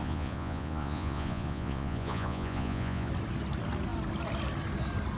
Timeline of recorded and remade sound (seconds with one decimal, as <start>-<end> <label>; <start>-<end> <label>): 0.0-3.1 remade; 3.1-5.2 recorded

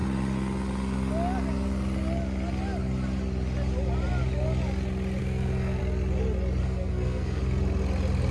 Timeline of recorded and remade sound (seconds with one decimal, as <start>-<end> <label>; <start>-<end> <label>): 0.0-5.2 recorded; 5.2-5.8 remade; 5.8-6.6 recorded; 6.6-7.4 remade; 7.4-8.3 recorded

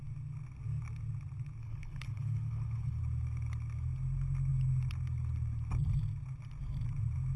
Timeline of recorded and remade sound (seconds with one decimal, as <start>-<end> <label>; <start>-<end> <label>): 0.0-1.6 recorded; 1.6-3.0 remade; 3.0-7.4 recorded

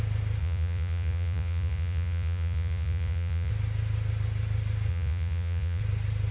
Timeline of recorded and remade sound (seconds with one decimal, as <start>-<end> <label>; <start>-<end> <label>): 0.0-0.4 recorded; 0.4-3.5 remade; 3.5-4.9 recorded; 4.9-5.8 remade; 5.8-6.3 recorded

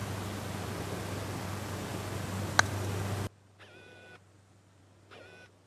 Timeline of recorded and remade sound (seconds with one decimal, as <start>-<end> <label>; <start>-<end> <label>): 0.0-5.7 recorded

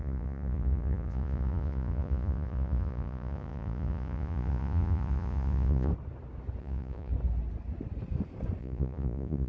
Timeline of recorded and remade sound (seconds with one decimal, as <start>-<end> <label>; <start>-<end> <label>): 0.0-5.9 remade; 5.9-6.6 recorded; 6.6-7.1 remade; 7.1-8.6 recorded; 8.6-9.5 remade